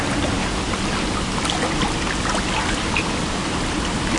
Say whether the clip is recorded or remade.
recorded